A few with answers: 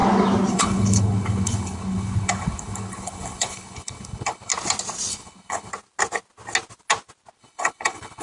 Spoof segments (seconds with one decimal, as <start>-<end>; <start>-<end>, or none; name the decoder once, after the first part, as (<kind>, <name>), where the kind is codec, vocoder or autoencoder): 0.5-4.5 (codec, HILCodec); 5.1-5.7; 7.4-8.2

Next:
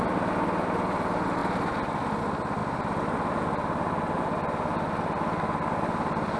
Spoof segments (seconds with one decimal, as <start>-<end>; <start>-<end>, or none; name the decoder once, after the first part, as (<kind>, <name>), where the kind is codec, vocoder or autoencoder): none

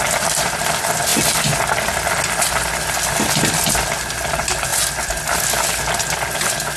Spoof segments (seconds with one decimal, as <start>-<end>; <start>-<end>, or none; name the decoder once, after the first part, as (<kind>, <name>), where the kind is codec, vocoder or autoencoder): none